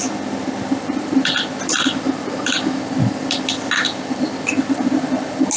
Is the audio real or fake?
real